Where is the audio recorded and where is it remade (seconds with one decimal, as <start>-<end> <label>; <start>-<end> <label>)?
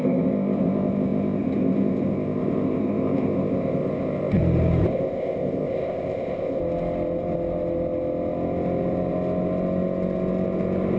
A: 0.0-4.4 remade; 4.4-4.9 recorded; 4.9-6.6 remade; 6.6-11.0 recorded